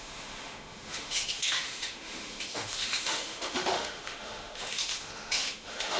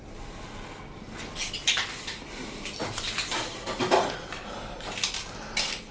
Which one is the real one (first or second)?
second